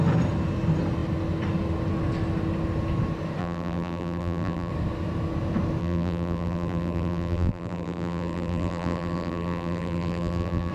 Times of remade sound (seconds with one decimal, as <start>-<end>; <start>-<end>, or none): 3.4-4.7; 5.8-10.7